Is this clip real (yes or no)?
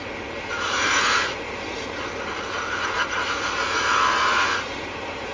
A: no